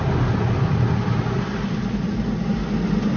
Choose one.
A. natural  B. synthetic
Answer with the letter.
A